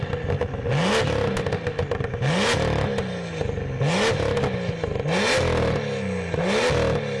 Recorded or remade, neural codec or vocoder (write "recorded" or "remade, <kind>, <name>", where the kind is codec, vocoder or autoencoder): recorded